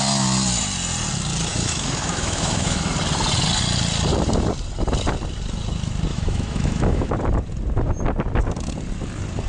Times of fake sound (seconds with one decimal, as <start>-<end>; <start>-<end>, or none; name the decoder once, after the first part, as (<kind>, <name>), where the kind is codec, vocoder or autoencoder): 1.5-2.8 (autoencoder, DAC-VAE); 6.1-7.1